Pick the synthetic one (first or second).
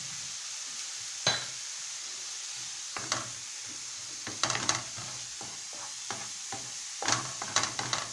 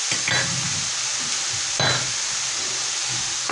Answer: first